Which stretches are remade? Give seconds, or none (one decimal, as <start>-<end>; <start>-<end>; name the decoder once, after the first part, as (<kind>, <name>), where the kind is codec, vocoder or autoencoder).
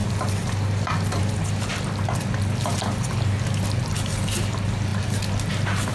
none